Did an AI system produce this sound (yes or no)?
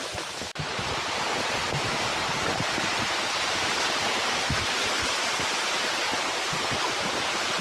no